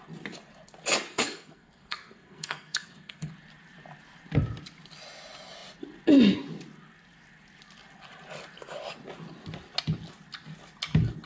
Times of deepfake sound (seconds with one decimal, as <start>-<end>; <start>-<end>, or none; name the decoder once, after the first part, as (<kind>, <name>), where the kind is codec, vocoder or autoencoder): 1.1-3.3 (codec, SNAC)